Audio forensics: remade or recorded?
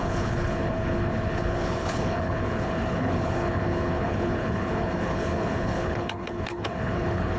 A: remade